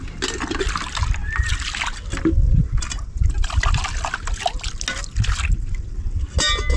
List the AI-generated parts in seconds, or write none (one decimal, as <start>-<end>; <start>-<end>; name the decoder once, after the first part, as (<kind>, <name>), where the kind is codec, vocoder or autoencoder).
none